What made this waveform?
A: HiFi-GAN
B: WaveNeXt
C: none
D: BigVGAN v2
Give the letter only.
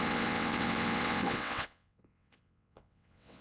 B